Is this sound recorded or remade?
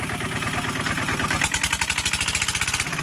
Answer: recorded